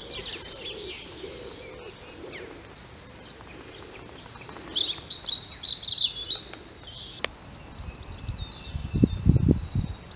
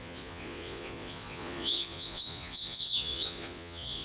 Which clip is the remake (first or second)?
second